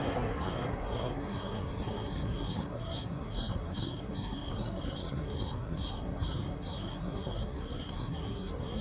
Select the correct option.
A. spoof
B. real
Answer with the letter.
A